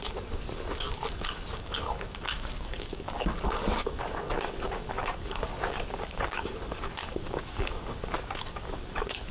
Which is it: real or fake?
fake